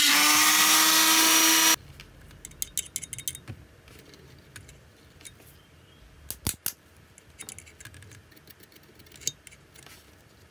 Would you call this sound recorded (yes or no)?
yes